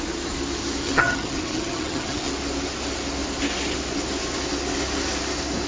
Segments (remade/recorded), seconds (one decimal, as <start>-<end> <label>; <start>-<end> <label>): 0.0-0.8 recorded; 0.8-2.3 remade; 2.3-5.7 recorded